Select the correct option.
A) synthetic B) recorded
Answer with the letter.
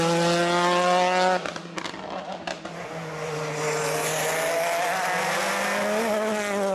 B